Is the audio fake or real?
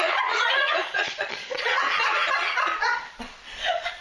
fake